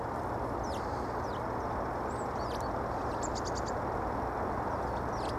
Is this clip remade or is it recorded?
recorded